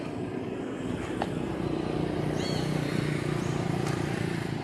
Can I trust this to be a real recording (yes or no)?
no